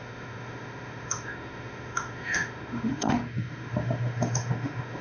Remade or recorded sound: remade